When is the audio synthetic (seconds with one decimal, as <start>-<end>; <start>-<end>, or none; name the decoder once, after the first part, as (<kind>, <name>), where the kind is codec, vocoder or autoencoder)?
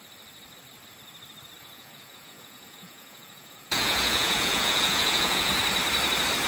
1.6-5.5 (vocoder, Vocos)